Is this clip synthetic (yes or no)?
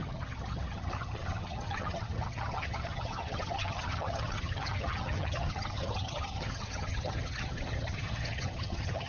yes